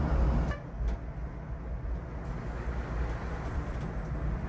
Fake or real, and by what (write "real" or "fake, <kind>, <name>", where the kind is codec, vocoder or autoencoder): real